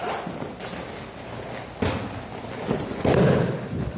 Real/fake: real